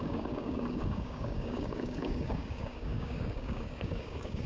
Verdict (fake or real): fake